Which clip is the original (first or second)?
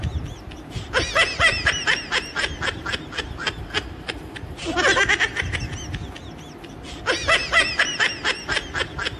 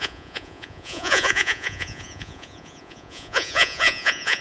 first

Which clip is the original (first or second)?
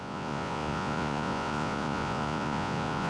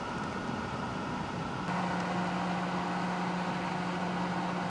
second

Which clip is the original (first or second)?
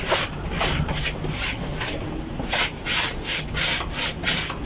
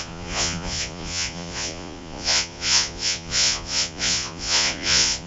first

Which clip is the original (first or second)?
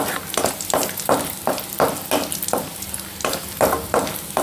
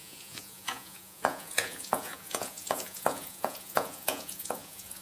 first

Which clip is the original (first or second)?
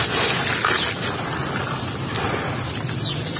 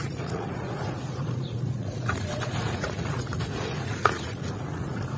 first